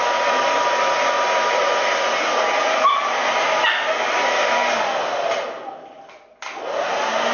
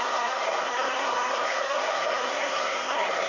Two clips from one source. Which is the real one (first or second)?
first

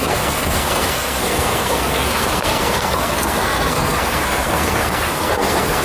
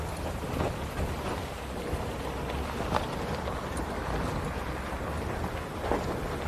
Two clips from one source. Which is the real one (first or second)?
second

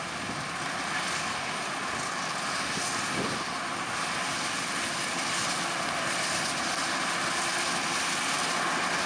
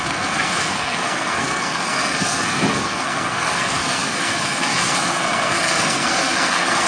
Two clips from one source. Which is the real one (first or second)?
first